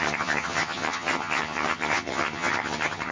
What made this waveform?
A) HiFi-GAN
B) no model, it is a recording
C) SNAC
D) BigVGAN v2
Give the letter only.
A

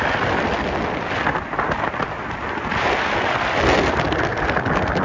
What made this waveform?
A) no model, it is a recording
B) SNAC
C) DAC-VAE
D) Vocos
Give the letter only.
A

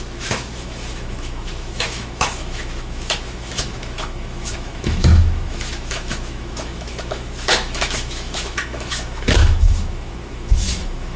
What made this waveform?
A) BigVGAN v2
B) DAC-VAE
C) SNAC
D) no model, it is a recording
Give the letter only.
B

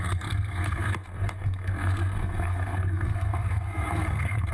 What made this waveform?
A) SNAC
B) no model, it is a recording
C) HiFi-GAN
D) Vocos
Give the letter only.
A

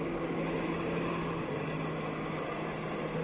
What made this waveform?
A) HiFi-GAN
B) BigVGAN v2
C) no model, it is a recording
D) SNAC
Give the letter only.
C